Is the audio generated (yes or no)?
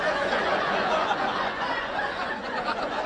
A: yes